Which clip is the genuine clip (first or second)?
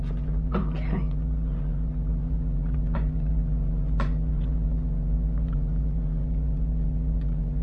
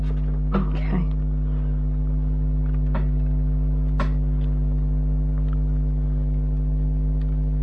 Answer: second